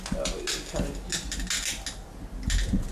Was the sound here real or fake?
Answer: real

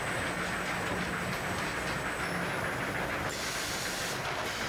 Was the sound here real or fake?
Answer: real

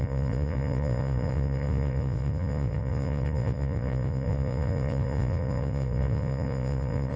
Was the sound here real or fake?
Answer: fake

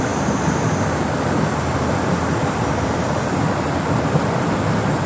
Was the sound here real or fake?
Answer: real